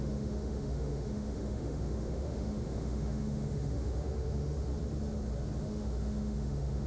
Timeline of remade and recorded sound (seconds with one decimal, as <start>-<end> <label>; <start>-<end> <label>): 0.0-4.7 remade; 4.7-5.6 recorded; 5.6-6.9 remade